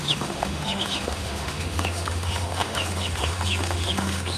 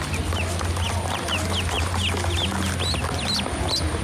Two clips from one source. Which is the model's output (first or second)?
first